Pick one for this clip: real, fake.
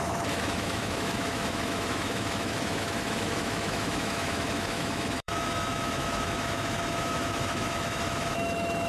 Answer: fake